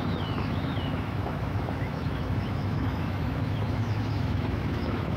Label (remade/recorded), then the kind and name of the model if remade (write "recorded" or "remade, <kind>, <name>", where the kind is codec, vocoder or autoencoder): remade, autoencoder, DAC-VAE